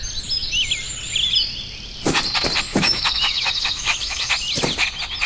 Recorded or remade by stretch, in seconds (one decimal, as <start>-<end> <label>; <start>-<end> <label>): 0.0-2.7 recorded; 2.7-4.3 remade; 4.3-5.3 recorded